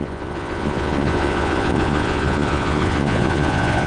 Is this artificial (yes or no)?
yes